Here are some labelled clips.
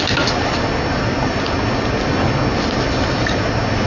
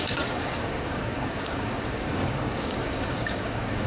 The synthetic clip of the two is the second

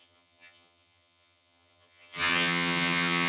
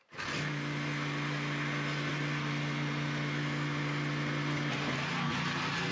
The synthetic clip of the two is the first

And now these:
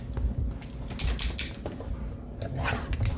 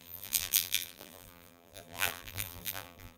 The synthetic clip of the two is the second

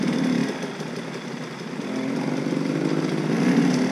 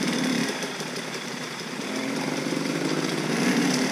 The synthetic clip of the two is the second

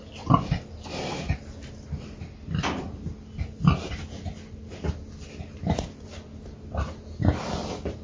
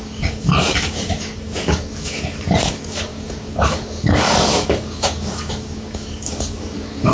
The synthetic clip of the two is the second